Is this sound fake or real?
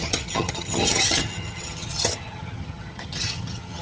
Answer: fake